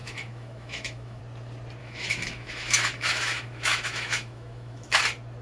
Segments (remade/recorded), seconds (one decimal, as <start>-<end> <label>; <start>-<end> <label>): 0.0-1.2 remade; 1.2-1.8 recorded; 1.8-5.0 remade; 5.0-5.4 recorded